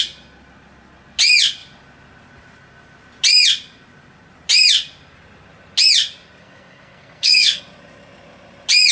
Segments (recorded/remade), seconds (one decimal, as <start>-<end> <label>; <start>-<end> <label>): 0.0-6.4 recorded; 6.4-7.6 remade; 7.6-8.9 recorded